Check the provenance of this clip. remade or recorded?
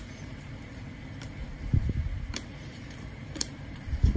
remade